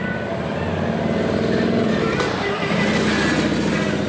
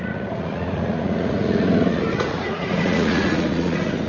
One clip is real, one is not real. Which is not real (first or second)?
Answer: second